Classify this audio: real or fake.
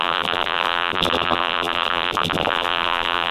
fake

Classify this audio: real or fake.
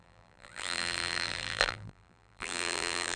fake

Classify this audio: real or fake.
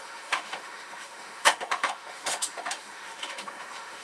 fake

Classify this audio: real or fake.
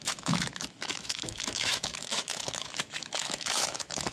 fake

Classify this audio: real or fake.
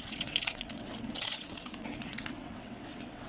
fake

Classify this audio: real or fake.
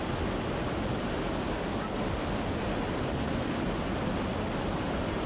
real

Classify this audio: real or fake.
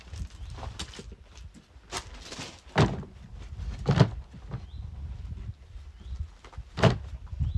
real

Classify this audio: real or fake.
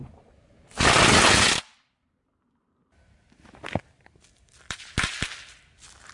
real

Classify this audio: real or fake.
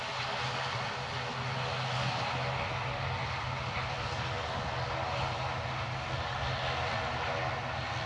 real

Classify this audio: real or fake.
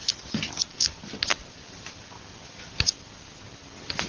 real